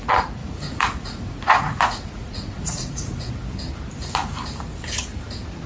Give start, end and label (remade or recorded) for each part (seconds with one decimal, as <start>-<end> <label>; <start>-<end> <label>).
0.0-0.4 recorded; 0.4-3.3 remade; 3.3-5.7 recorded